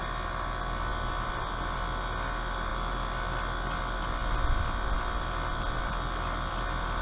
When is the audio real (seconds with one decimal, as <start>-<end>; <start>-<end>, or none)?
0.0-7.0